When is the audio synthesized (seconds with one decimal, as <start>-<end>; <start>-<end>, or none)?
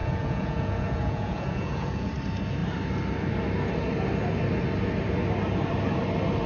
0.0-2.1